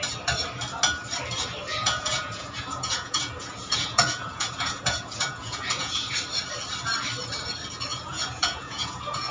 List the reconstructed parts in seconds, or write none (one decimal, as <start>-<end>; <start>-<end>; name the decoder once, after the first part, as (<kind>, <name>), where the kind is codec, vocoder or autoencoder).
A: 1.7-6.1 (vocoder, Vocos); 7.9-9.3